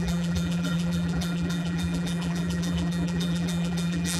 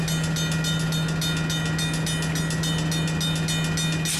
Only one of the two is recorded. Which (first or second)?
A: second